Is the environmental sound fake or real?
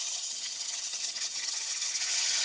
fake